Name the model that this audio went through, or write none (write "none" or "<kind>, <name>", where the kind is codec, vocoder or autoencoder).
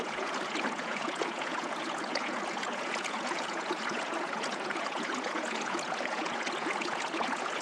vocoder, Vocos